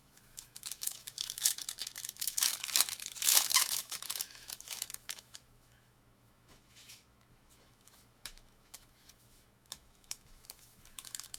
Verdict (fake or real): fake